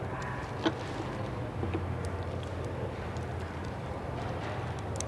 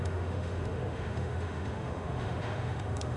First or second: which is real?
first